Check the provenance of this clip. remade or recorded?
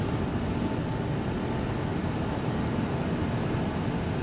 recorded